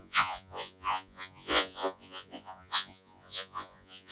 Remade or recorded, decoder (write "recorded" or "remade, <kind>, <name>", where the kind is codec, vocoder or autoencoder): remade, vocoder, Vocos